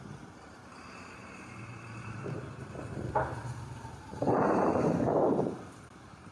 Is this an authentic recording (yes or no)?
no